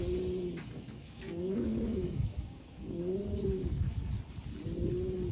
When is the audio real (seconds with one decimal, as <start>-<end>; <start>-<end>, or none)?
0.0-0.7; 3.0-3.6; 4.1-5.3